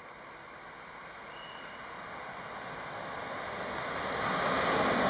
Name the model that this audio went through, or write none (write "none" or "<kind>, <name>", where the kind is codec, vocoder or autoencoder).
none